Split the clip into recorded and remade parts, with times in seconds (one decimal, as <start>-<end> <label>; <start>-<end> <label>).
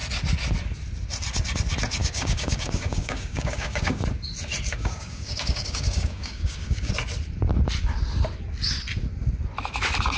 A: 0.0-2.0 recorded; 2.0-4.0 remade; 4.0-4.7 recorded; 4.7-6.9 remade; 6.9-10.2 recorded